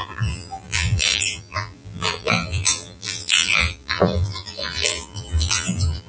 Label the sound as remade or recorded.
remade